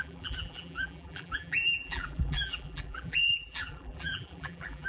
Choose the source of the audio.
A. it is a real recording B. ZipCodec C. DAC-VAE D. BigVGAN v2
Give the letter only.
D